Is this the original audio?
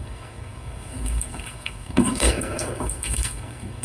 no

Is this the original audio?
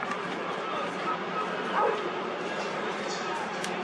no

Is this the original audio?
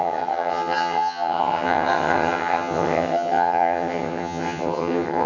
no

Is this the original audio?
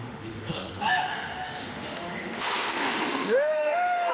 no